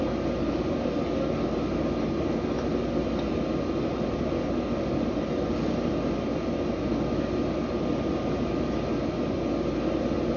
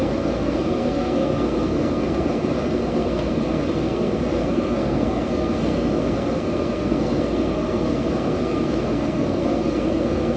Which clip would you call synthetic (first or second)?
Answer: second